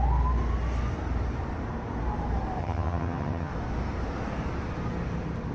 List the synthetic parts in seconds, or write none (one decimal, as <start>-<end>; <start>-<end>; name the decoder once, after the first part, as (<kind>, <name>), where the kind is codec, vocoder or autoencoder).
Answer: 2.6-3.5 (vocoder, HiFi-GAN)